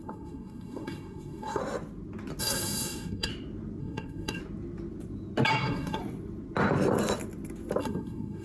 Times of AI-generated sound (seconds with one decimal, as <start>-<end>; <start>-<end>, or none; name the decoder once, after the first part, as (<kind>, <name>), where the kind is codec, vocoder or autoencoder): 0.0-1.6 (codec, SNAC); 2.4-3.3; 3.8-4.4; 5.5-6.0; 7.8-8.4